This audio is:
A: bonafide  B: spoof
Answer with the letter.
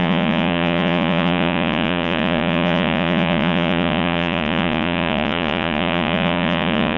B